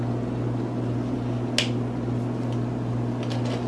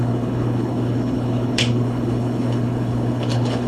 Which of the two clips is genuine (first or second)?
first